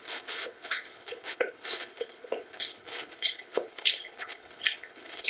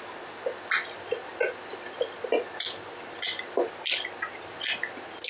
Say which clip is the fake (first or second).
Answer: first